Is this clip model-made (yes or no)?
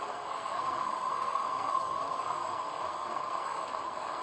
yes